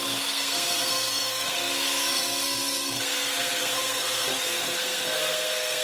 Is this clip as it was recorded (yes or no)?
no